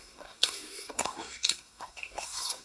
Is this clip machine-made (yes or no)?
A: yes